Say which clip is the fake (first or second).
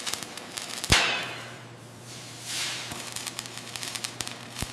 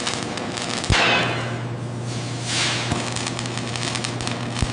first